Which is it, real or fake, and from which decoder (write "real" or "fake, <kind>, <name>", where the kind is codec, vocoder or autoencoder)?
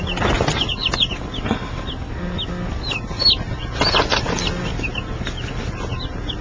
real